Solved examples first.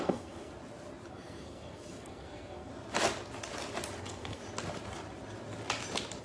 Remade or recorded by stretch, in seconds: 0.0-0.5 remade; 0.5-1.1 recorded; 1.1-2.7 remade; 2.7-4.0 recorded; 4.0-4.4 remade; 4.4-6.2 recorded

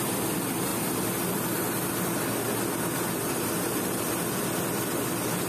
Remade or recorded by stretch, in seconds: 0.0-5.5 recorded